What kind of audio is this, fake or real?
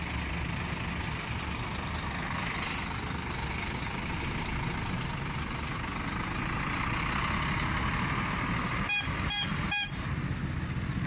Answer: real